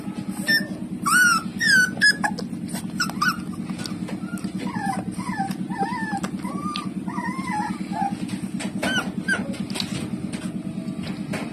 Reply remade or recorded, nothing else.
recorded